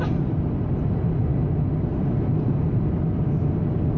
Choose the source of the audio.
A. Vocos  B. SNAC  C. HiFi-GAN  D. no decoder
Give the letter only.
D